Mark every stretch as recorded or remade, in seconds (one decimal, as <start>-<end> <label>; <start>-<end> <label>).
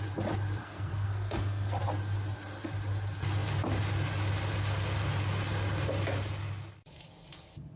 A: 0.0-0.6 recorded; 0.6-1.8 remade; 1.8-7.8 recorded